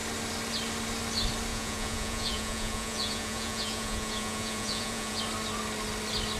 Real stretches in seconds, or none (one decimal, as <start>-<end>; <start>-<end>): 0.0-1.5; 5.2-6.4